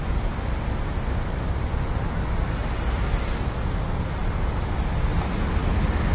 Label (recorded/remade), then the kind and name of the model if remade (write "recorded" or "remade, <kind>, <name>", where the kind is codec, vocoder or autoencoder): recorded